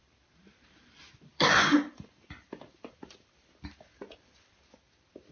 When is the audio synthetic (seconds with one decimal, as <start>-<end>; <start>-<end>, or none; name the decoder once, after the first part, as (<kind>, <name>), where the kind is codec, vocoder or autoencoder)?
1.3-4.5 (vocoder, BigVGAN v2)

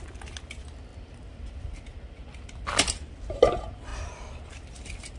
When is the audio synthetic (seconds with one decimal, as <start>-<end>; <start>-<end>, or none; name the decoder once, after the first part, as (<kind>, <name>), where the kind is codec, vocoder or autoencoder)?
0.9-2.0 (vocoder, BigVGAN v2)

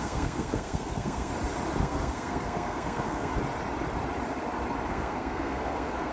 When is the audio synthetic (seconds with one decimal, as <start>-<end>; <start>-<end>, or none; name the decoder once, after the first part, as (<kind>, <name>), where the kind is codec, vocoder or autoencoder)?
0.0-1.3 (codec, SNAC); 1.8-3.3; 4.9-6.1

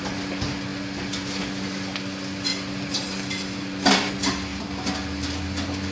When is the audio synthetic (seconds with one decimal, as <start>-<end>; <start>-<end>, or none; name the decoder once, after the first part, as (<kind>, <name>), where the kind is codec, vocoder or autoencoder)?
none

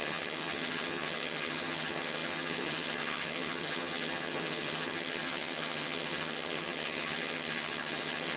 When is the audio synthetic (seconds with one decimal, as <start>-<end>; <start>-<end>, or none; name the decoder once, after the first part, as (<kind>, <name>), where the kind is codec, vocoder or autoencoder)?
0.0-8.4 (vocoder, HiFi-GAN)

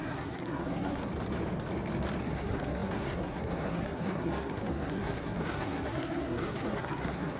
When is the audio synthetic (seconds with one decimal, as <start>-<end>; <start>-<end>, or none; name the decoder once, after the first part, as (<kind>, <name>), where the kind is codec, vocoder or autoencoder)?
0.0-1.1 (codec, SNAC); 2.2-7.4

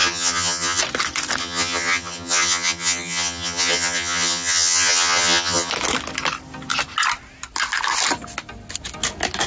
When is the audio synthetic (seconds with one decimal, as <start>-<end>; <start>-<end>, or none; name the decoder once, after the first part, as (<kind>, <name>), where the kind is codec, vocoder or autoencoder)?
0.0-0.8 (vocoder, HiFi-GAN); 1.4-5.7

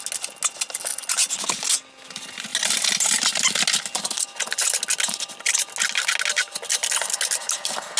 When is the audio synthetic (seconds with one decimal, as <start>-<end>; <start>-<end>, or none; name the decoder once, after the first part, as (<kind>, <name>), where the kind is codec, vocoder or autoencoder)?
none